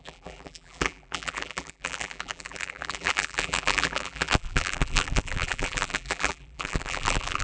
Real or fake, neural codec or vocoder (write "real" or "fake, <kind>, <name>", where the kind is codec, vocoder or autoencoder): fake, vocoder, BigVGAN v2